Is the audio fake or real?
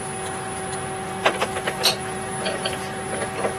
real